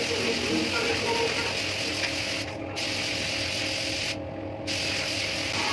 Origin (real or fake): real